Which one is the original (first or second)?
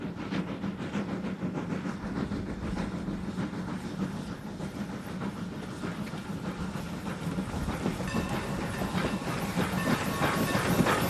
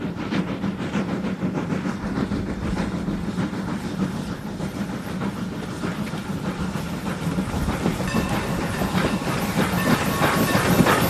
first